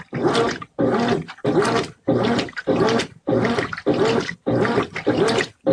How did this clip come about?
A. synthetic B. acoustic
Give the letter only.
B